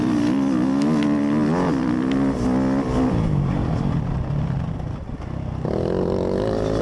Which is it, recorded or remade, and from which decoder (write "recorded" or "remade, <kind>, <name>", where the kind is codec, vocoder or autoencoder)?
recorded